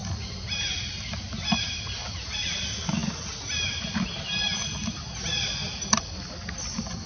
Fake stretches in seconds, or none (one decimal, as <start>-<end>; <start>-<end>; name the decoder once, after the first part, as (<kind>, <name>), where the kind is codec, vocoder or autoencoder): none